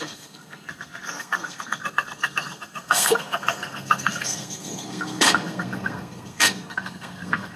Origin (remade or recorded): remade